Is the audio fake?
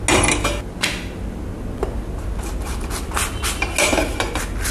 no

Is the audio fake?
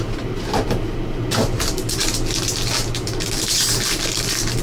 no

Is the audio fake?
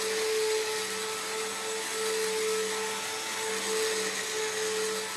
no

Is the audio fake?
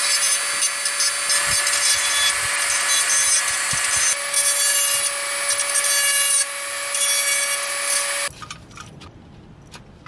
no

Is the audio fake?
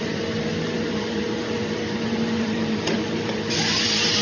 yes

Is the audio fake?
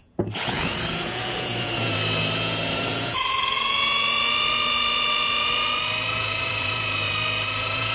yes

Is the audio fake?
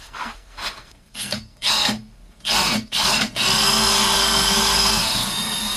yes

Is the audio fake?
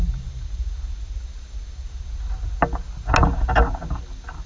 no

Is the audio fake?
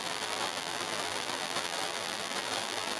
yes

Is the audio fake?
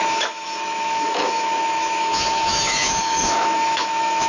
yes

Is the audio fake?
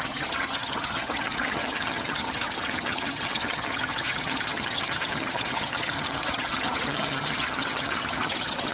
yes